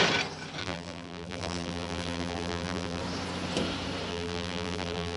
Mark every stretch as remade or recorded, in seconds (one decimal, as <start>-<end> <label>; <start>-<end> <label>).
0.0-0.6 recorded; 0.6-3.0 remade; 3.0-4.1 recorded; 4.1-5.2 remade